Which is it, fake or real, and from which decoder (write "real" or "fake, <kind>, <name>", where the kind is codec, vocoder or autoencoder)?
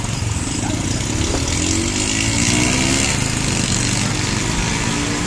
real